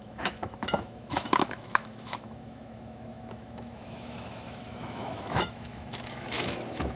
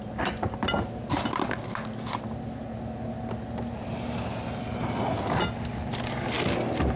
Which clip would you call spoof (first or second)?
first